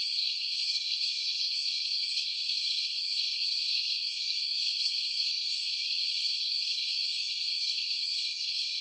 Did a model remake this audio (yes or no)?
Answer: yes